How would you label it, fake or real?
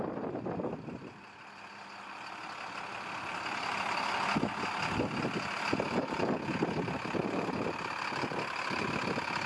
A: real